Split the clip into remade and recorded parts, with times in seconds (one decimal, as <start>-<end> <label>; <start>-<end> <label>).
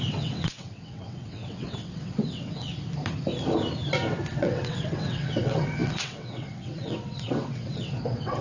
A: 0.0-2.7 remade; 2.7-4.3 recorded; 4.3-8.4 remade